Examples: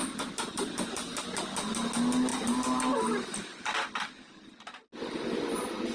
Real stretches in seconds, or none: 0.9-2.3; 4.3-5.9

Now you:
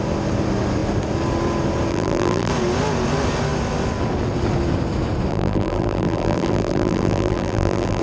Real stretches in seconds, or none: 0.0-1.9; 2.5-5.3

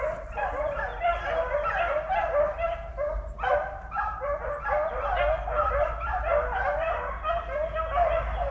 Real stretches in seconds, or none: 0.0-0.9; 4.4-5.6; 7.0-8.5